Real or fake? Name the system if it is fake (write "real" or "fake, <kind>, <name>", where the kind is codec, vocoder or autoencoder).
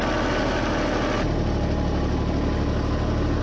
real